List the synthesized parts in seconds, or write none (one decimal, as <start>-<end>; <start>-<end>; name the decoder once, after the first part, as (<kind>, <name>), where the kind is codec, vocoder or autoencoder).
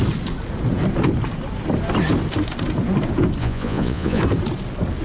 3.4-4.2 (vocoder, Vocos)